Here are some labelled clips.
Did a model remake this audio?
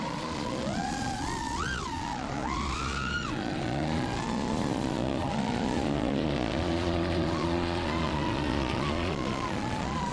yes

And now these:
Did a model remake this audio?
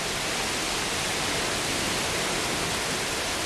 no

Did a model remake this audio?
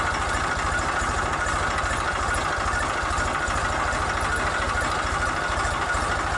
no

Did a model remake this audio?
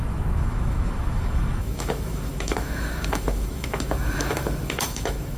yes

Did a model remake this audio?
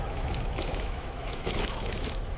yes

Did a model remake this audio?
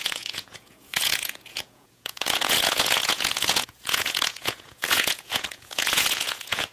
yes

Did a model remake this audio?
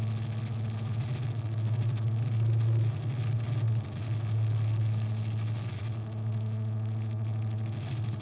no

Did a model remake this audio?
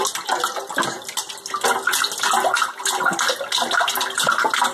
no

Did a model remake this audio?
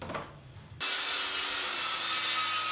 no